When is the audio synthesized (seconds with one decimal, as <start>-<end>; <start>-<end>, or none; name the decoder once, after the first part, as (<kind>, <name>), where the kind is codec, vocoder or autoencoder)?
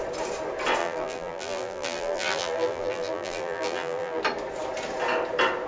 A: 0.8-4.2 (vocoder, BigVGAN v2)